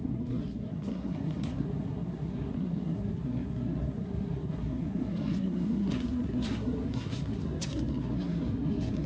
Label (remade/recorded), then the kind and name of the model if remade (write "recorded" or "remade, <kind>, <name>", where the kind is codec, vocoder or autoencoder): remade, codec, SNAC